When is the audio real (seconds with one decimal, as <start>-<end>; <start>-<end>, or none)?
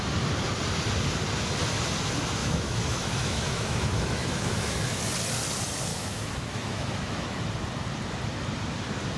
0.0-2.4; 5.0-5.9; 7.2-9.2